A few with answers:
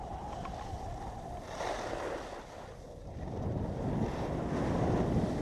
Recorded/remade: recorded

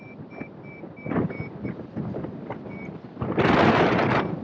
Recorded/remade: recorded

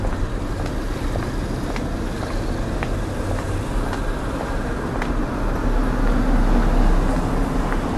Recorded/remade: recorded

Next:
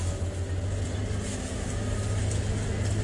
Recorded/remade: recorded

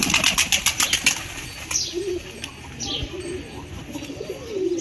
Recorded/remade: recorded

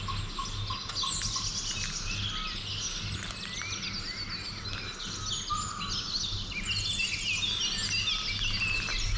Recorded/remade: recorded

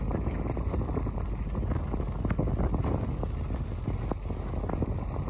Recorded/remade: recorded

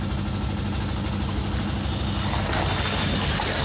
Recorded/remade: recorded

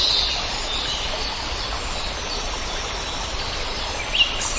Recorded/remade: recorded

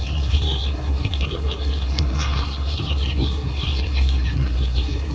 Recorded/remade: remade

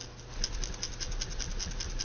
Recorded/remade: recorded